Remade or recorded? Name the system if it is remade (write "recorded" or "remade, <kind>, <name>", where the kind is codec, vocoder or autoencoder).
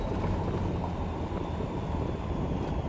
recorded